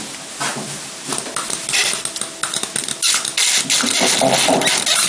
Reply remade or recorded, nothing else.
recorded